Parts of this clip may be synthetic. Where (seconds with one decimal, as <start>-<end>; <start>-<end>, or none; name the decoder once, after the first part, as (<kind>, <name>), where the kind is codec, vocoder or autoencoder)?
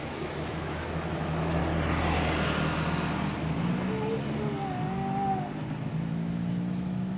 0.0-1.6 (autoencoder, DAC-VAE); 5.9-7.2